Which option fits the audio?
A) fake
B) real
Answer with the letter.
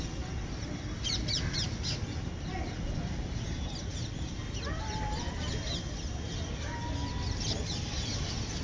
B